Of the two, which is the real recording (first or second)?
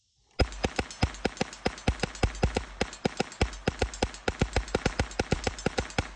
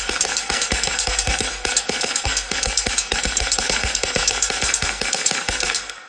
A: first